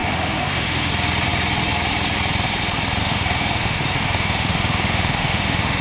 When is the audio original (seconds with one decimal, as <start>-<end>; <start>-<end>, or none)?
0.9-3.0